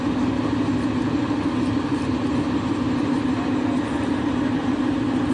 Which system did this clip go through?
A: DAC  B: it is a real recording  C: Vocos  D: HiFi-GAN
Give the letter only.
B